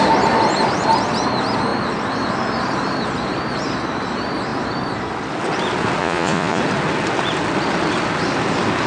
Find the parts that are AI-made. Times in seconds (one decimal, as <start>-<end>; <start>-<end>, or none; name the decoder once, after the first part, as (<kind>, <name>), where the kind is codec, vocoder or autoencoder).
6.0-6.6 (vocoder, Vocos)